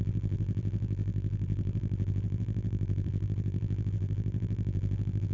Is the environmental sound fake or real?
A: fake